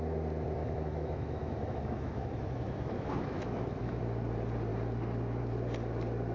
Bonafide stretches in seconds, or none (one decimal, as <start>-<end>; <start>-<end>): 0.0-0.6; 4.0-6.3